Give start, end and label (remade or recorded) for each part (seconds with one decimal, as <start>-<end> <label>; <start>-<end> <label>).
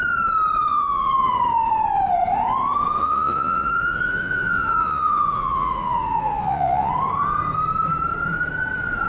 0.0-0.7 recorded; 0.7-1.3 remade; 1.3-3.0 recorded; 3.0-6.9 remade; 6.9-9.1 recorded